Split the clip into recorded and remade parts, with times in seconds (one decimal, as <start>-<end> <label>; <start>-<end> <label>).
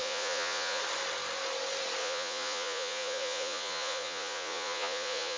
0.0-0.8 remade; 0.8-2.0 recorded; 2.0-5.4 remade